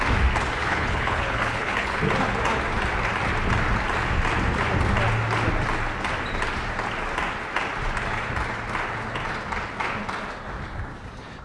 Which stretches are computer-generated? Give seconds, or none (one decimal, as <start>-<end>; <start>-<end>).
0.6-2.0